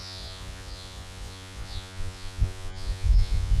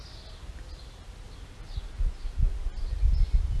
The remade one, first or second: first